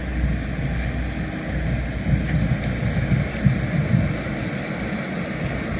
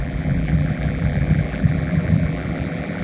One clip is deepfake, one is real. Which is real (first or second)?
first